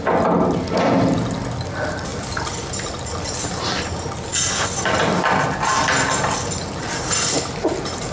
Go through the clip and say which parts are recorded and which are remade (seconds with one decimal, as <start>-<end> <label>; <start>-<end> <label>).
0.0-8.1 recorded